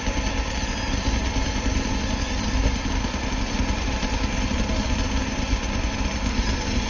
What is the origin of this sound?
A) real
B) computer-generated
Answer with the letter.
A